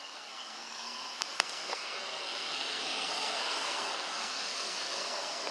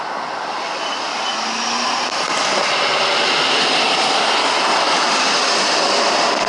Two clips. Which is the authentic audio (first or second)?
second